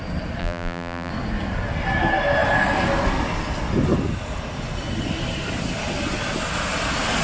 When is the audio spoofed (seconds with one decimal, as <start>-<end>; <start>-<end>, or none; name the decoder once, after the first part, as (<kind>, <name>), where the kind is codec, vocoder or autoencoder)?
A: 0.4-1.1 (vocoder, BigVGAN v2)